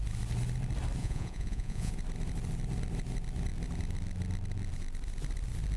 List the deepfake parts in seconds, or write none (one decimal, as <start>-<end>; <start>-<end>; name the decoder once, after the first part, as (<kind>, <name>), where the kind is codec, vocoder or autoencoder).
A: 1.0-1.9 (vocoder, Vocos)